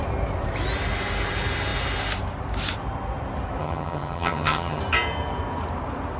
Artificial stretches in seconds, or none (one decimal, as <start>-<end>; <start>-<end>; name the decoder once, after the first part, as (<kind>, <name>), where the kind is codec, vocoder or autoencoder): 3.6-4.8 (vocoder, HiFi-GAN)